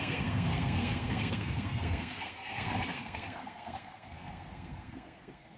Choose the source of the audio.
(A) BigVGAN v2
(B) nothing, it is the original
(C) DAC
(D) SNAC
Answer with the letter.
D